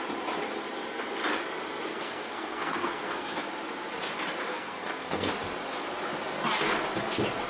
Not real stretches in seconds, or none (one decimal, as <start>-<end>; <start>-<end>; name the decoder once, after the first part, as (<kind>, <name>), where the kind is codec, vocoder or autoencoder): 1.9-3.5 (codec, SNAC); 4.5-5.3